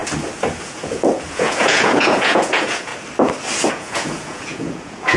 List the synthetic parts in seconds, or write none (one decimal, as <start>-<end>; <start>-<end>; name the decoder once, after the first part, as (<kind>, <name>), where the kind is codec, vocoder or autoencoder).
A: 0.5-2.9 (vocoder, Vocos); 3.7-5.2